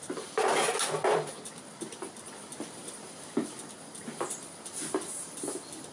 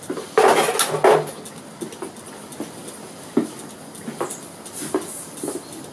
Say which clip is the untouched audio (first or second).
second